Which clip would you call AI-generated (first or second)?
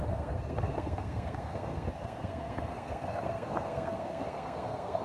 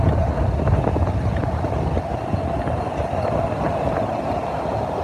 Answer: first